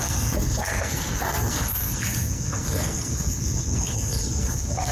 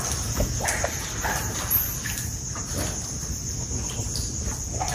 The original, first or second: second